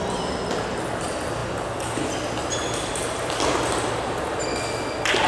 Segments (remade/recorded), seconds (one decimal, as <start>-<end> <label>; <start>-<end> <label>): 0.0-5.3 recorded